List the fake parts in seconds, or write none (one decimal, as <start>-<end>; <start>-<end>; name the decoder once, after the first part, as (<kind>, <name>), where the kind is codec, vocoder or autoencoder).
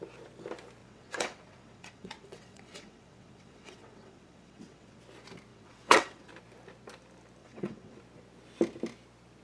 0.8-5.0 (vocoder, WaveNeXt); 5.5-6.3; 7.4-8.0